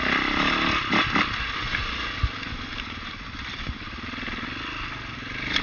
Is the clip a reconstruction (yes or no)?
no